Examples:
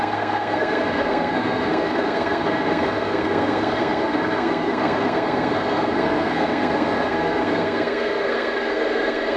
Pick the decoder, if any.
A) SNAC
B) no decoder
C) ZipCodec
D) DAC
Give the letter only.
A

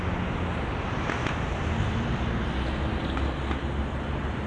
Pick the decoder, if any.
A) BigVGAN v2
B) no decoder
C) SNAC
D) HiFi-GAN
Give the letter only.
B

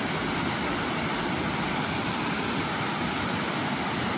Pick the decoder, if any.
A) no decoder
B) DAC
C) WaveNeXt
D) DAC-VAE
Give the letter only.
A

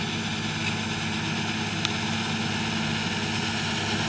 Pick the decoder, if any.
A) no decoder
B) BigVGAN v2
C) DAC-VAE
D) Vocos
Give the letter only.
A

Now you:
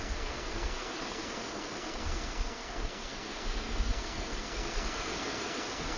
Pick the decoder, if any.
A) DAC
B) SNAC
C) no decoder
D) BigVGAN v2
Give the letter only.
B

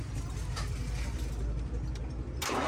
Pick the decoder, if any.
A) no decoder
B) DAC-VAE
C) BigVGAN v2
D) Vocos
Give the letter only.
A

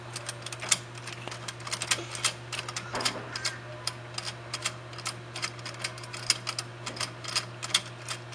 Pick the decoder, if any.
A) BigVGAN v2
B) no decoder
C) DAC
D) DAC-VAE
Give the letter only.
B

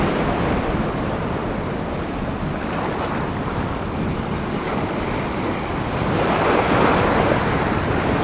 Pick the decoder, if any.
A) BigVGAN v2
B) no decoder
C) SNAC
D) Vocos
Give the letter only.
B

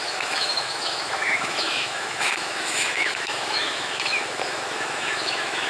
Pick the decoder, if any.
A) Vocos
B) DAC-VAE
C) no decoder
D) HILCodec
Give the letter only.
B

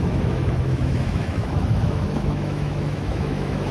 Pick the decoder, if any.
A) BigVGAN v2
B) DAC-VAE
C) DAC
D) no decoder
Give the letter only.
B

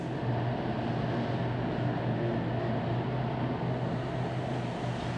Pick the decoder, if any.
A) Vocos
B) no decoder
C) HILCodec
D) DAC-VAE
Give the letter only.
B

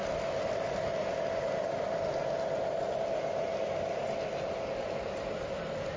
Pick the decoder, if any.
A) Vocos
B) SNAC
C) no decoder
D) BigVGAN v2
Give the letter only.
C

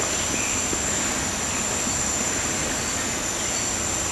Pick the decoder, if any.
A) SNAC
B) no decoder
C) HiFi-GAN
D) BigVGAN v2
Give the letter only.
B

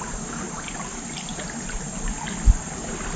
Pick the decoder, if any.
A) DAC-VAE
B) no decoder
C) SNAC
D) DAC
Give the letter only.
B